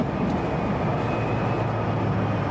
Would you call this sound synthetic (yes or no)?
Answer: no